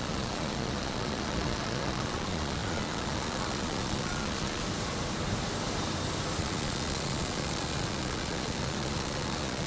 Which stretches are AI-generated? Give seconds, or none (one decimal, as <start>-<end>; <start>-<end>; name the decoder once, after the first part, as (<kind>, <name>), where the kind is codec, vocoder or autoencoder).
0.0-4.6 (vocoder, Vocos); 6.4-9.7